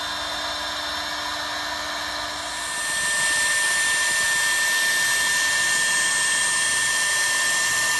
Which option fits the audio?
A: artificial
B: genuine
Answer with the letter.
B